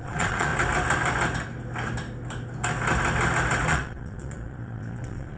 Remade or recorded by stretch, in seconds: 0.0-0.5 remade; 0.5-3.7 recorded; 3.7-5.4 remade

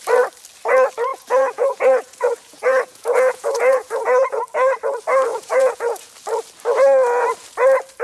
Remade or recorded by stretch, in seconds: 0.0-1.1 recorded; 1.1-4.4 remade; 4.4-5.3 recorded; 5.3-6.1 remade; 6.1-8.0 recorded

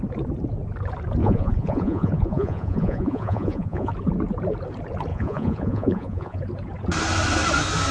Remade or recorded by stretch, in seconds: 0.0-1.2 recorded; 1.2-3.9 remade; 3.9-5.1 recorded; 5.1-6.4 remade; 6.4-7.9 recorded

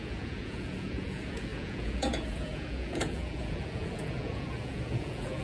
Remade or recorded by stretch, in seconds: 0.0-5.4 remade